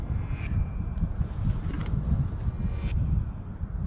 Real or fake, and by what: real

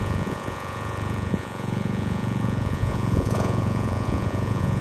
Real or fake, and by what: fake, vocoder, Vocos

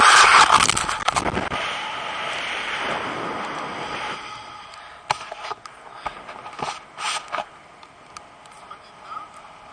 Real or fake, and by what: real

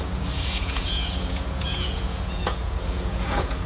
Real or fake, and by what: fake, vocoder, Vocos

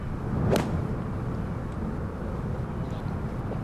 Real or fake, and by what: real